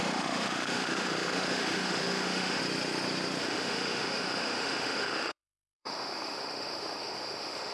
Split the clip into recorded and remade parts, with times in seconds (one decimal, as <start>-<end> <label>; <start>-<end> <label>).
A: 0.0-2.6 remade; 2.6-3.4 recorded; 3.4-7.7 remade